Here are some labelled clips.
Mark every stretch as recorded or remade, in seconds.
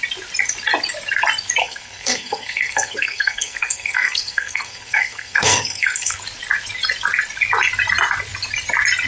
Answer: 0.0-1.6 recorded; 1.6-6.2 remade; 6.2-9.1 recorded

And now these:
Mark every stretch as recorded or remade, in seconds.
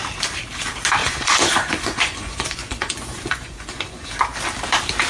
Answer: 0.0-1.0 recorded; 1.0-4.1 remade; 4.1-5.1 recorded